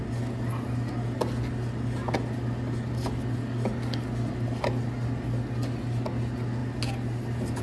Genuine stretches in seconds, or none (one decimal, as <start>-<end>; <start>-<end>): 0.0-7.6